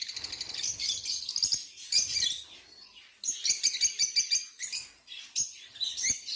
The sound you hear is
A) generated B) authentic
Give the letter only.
B